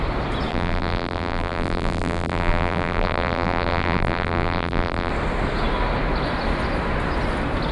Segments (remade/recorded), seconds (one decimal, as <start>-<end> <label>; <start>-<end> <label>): 0.0-0.5 recorded; 0.5-5.1 remade; 5.1-7.7 recorded